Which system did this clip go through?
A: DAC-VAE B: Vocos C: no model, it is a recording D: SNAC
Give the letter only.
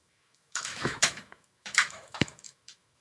A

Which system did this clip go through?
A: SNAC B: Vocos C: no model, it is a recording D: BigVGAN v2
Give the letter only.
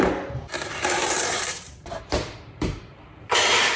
D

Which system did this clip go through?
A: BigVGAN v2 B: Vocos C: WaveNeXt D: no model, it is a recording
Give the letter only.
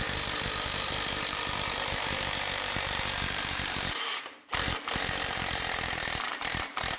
A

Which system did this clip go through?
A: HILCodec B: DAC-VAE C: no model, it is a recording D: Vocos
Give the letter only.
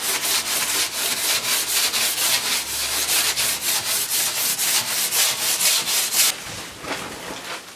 C